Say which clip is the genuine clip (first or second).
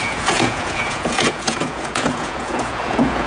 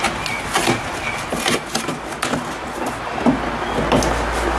second